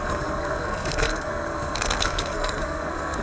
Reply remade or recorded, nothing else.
remade